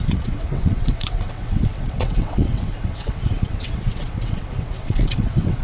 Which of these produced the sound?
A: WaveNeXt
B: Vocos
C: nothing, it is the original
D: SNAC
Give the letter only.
A